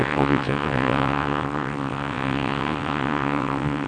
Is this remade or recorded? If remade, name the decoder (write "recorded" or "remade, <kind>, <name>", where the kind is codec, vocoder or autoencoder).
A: remade, vocoder, WaveNeXt